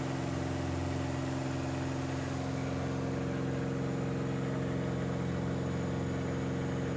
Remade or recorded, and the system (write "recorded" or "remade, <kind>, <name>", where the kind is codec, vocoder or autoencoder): recorded